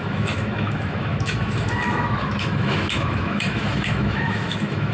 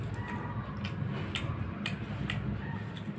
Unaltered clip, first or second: second